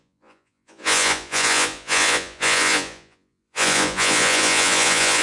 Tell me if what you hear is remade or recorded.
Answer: remade